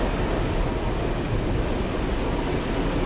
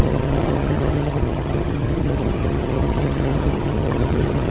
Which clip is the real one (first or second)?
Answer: first